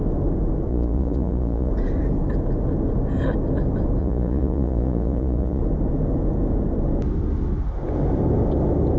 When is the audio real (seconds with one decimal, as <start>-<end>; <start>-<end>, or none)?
0.0-0.7; 1.7-4.0; 5.6-9.0